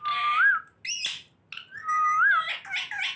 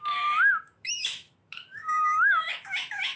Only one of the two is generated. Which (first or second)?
second